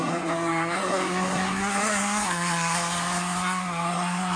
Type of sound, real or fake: fake